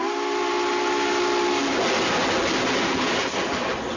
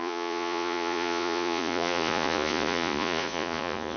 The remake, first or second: second